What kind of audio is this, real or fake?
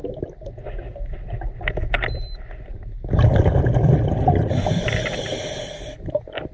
real